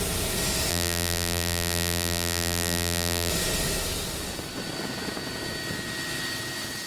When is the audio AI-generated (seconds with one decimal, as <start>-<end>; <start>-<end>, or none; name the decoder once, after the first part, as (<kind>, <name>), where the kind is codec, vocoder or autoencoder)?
0.7-3.3 (vocoder, BigVGAN v2)